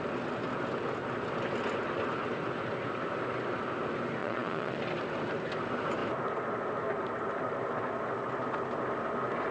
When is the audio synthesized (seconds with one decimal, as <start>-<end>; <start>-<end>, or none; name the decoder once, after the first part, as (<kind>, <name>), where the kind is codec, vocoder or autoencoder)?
4.2-4.8 (vocoder, Vocos)